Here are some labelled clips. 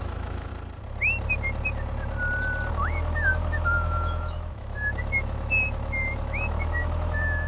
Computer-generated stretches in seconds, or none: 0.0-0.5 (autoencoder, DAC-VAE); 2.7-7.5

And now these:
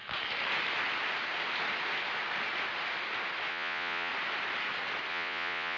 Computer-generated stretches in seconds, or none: 3.5-4.1 (vocoder, Vocos); 5.1-5.8

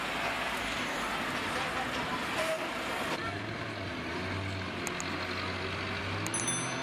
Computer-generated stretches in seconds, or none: 0.6-1.1 (codec, DAC)